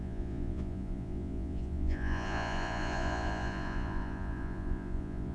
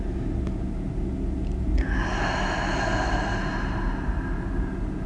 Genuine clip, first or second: second